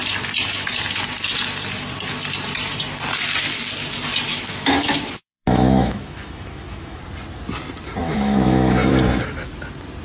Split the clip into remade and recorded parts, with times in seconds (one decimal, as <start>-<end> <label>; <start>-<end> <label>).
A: 0.0-4.3 recorded; 4.3-7.0 remade; 7.0-8.0 recorded; 8.0-8.9 remade; 8.9-10.0 recorded